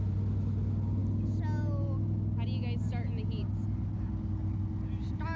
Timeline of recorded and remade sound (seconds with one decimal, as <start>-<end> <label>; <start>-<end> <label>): 0.0-5.4 recorded